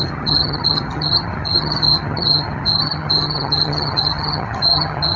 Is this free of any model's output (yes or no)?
no